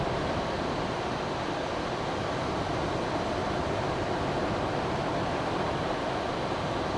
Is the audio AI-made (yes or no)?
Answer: no